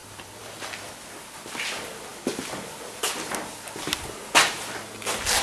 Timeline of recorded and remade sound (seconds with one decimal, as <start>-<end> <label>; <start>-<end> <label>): 0.0-0.9 remade; 0.9-5.4 recorded